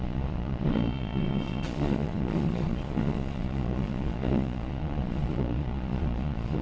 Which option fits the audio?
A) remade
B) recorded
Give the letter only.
A